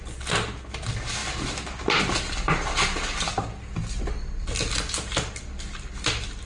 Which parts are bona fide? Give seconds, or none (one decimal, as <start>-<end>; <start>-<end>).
0.0-6.5